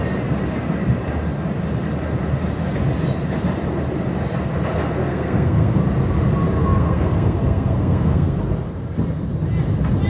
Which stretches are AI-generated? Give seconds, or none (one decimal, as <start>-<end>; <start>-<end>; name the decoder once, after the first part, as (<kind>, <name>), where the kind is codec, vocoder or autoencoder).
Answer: 5.0-5.8 (codec, SNAC); 6.6-8.4